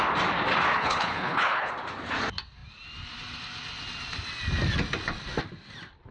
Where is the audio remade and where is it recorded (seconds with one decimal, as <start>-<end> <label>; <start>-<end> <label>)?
0.0-0.7 recorded; 0.7-1.7 remade; 1.7-6.1 recorded